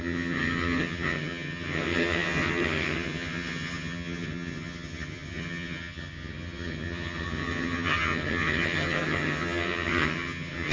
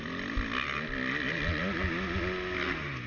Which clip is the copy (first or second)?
first